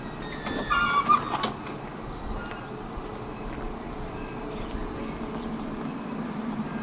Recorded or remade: recorded